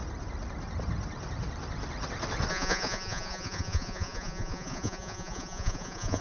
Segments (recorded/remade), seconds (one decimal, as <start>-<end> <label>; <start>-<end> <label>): 0.0-2.5 recorded; 2.5-6.2 remade